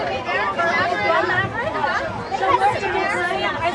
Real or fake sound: real